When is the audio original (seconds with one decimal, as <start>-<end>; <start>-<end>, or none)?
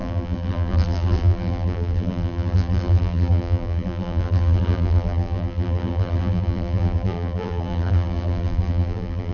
none